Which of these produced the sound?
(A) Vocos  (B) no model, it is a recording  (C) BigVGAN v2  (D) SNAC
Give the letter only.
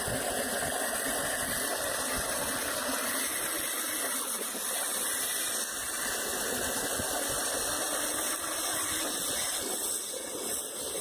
B